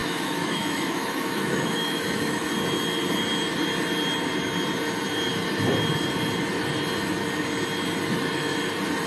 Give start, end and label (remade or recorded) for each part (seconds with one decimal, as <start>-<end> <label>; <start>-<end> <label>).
0.0-2.5 remade; 2.5-9.1 recorded